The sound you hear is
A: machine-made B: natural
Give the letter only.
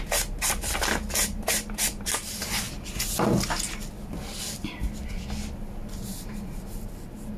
B